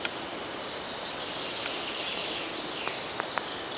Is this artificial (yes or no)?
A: no